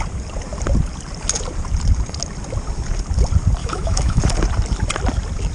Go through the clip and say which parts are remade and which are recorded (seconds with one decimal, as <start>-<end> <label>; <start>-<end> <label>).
0.0-3.6 recorded; 3.6-4.2 remade; 4.2-5.5 recorded